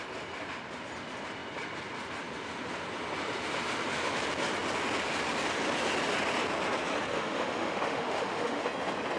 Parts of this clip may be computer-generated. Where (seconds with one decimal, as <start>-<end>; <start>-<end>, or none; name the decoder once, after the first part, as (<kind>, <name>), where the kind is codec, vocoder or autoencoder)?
7.1-8.6 (autoencoder, DAC-VAE)